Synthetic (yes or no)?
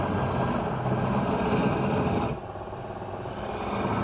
no